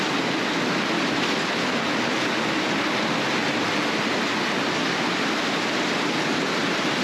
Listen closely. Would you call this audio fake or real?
real